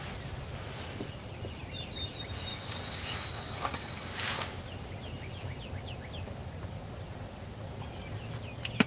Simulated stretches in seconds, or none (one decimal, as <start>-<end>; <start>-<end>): 2.5-4.5